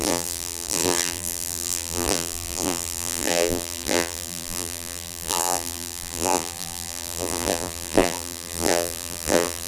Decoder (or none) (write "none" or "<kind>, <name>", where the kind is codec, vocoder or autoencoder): vocoder, BigVGAN v2